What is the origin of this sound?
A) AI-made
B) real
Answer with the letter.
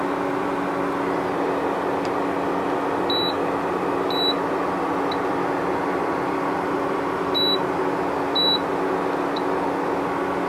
B